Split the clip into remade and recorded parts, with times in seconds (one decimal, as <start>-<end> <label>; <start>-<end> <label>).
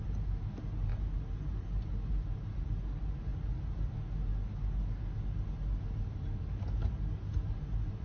0.0-8.0 recorded